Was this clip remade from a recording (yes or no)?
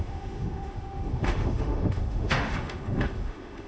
yes